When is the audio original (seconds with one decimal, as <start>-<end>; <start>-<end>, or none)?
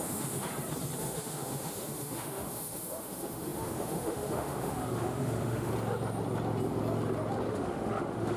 0.5-1.0; 5.7-7.5